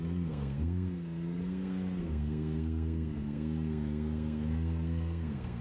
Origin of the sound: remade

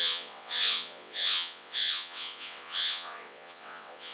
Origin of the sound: remade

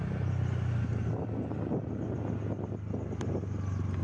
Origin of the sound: recorded